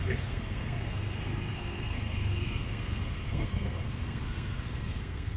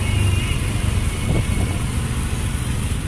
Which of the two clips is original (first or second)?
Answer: second